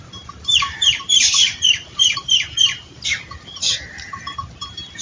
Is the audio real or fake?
fake